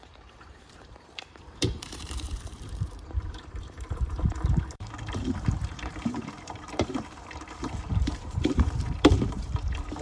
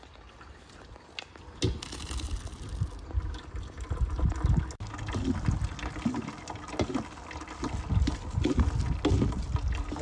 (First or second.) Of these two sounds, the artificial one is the first